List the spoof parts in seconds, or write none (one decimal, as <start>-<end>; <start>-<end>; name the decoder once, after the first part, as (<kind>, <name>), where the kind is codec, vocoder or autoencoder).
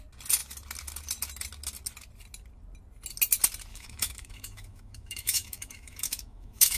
3.7-6.8 (autoencoder, DAC-VAE)